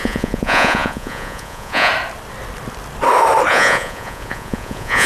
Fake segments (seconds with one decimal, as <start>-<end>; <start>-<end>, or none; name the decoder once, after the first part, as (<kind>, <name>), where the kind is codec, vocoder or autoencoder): 0.0-1.9 (vocoder, Vocos); 3.5-5.1